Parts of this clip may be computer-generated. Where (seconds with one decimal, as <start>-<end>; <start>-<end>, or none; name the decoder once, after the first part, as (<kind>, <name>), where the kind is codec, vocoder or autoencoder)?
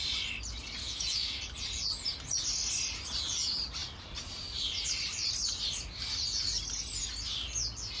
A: 0.8-1.4 (autoencoder, DAC-VAE)